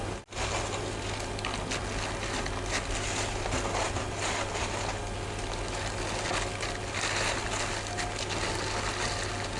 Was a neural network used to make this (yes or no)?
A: no